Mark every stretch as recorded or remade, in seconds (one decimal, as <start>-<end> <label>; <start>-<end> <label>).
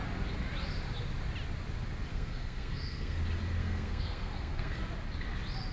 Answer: 0.0-2.1 recorded; 2.1-3.2 remade; 3.2-3.6 recorded; 3.6-4.8 remade; 4.8-5.7 recorded